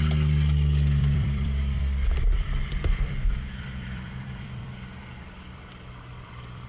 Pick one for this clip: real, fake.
fake